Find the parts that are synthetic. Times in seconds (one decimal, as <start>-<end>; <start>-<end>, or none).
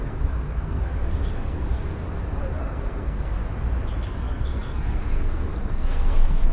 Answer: 0.0-2.0; 2.6-3.4; 4.0-6.5